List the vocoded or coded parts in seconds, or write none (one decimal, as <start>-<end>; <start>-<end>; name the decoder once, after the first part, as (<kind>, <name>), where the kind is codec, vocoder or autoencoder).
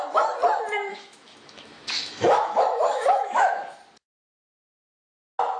0.9-3.8 (autoencoder, DAC-VAE)